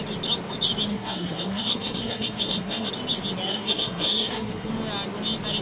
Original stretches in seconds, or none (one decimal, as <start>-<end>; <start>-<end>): 0.0-0.9; 2.9-3.5; 4.7-5.6

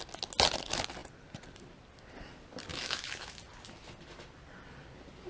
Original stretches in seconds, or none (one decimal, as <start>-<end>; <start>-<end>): 0.0-2.7; 3.3-5.3

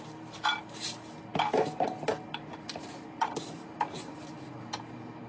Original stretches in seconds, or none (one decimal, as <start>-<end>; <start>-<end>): 0.0-5.3

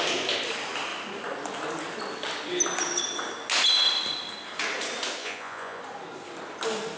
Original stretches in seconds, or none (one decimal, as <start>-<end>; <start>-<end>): 0.0-5.2; 5.8-7.0